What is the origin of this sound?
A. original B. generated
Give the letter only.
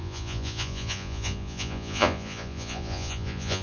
B